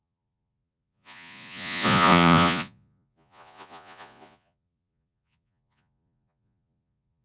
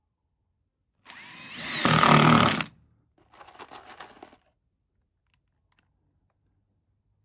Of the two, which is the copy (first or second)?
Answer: first